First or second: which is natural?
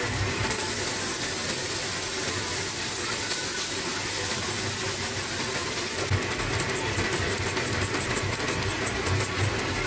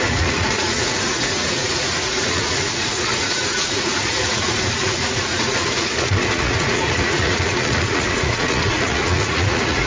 first